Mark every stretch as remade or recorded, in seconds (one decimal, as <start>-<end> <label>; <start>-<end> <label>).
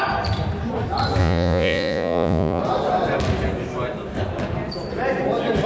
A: 0.0-1.2 recorded; 1.2-2.6 remade; 2.6-5.7 recorded